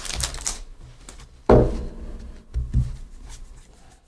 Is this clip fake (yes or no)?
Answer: no